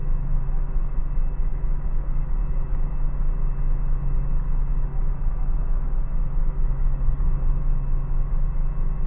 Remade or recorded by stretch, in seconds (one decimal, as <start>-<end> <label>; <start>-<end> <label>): 0.0-1.0 remade; 1.0-1.5 recorded; 1.5-2.4 remade; 2.4-4.9 recorded; 4.9-7.1 remade; 7.1-9.1 recorded